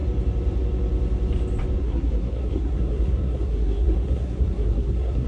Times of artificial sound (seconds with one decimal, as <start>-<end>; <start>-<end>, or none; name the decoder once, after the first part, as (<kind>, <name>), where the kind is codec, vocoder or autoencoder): 1.8-5.3 (codec, SNAC)